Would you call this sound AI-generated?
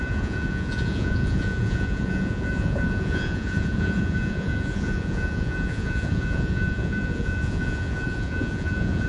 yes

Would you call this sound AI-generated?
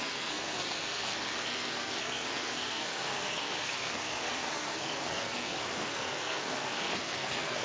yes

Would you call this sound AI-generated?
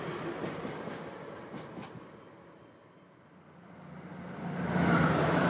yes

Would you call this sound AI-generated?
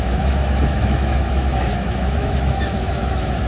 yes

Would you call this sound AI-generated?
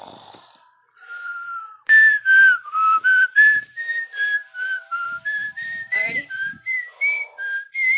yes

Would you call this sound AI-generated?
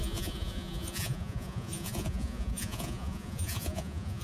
yes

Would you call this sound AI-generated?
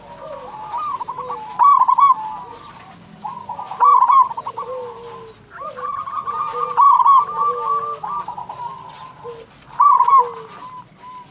no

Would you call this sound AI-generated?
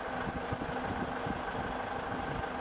no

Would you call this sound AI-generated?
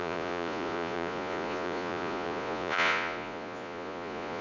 yes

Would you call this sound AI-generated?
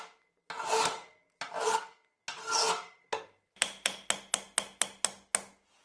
no